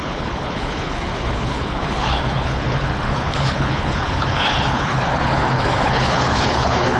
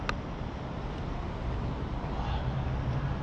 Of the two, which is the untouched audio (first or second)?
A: second